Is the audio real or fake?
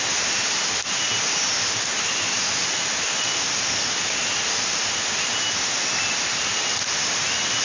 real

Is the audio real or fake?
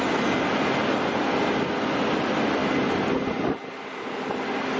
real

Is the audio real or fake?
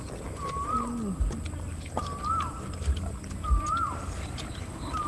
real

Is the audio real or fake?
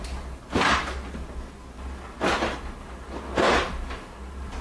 real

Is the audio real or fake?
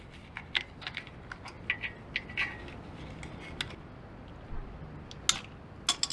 real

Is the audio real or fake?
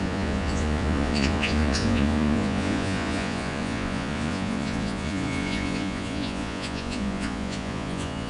fake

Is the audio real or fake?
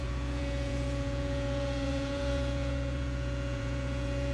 fake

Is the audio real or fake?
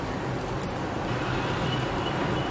fake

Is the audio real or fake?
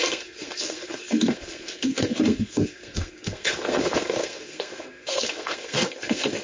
fake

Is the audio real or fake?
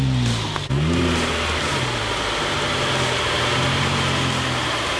real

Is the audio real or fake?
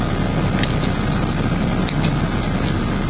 real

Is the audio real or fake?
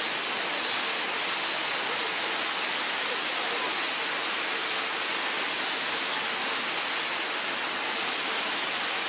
real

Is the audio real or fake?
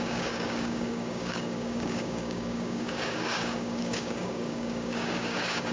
fake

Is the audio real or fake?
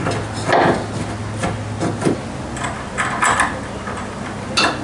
real